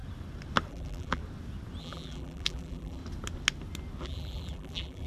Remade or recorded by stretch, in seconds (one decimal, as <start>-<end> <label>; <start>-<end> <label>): 0.0-0.7 recorded; 0.7-1.2 remade; 1.2-1.8 recorded; 1.8-3.0 remade; 3.0-4.0 recorded; 4.0-5.1 remade

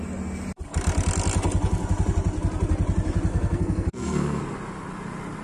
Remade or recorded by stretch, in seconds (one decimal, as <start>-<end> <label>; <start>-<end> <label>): 0.0-3.3 recorded; 3.3-4.4 remade; 4.4-5.4 recorded

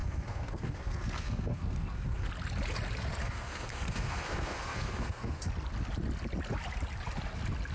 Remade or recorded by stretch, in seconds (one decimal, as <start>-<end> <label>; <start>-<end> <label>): 0.0-2.3 remade; 2.3-3.2 recorded; 3.2-5.5 remade; 5.5-7.7 recorded

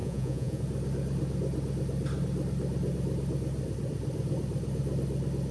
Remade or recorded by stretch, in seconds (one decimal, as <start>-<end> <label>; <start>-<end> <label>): 0.0-0.6 remade; 0.6-5.5 recorded